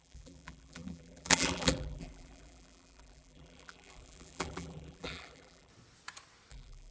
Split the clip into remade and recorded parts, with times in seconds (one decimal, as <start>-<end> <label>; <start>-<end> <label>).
0.0-5.7 remade; 5.7-6.5 recorded; 6.5-6.9 remade